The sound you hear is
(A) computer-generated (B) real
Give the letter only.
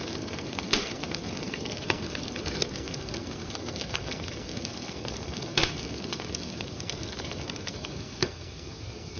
A